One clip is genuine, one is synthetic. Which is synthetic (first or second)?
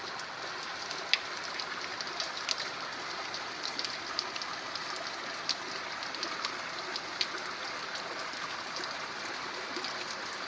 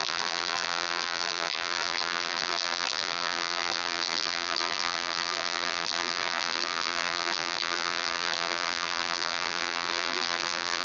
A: second